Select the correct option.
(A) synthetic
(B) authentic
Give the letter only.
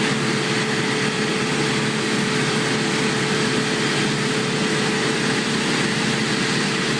B